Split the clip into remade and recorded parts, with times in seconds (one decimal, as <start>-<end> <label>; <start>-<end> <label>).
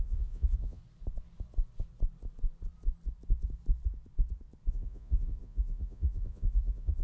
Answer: 0.0-0.8 remade; 0.8-4.7 recorded; 4.7-7.0 remade